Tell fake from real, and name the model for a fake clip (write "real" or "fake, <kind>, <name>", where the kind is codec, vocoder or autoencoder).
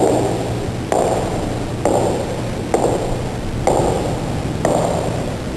real